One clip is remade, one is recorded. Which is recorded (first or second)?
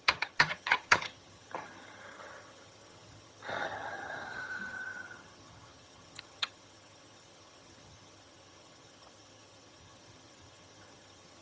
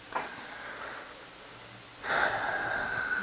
second